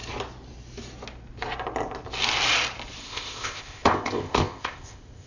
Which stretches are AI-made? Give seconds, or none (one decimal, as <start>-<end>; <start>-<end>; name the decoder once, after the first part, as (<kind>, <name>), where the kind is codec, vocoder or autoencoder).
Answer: 3.0-5.3 (codec, ZipCodec)